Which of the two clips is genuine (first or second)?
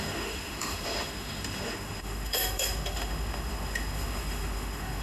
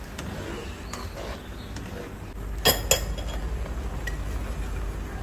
second